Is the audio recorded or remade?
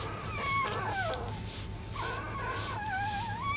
recorded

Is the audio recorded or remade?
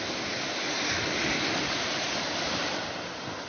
recorded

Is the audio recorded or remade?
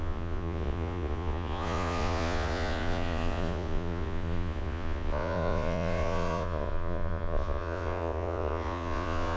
remade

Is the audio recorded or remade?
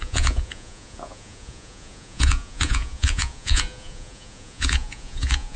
remade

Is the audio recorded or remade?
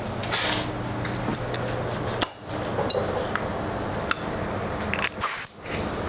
recorded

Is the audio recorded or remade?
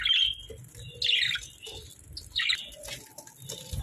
recorded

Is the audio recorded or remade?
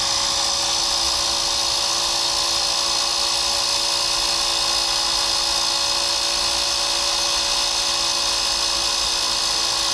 recorded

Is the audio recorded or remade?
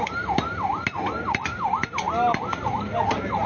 recorded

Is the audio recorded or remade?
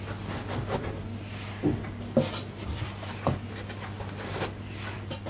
recorded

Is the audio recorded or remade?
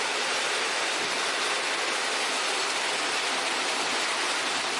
recorded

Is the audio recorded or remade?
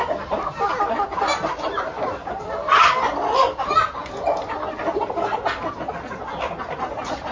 recorded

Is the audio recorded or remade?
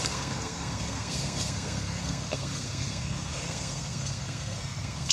remade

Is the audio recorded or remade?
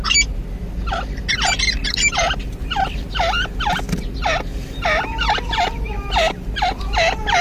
recorded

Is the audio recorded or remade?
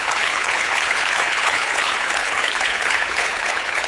remade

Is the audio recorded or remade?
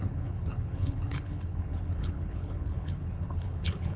remade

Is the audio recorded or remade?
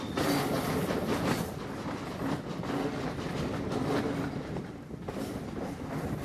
recorded